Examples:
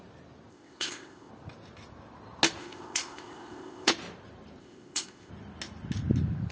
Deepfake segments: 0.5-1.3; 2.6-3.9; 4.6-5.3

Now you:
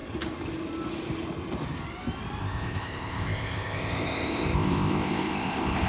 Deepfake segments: 2.4-5.9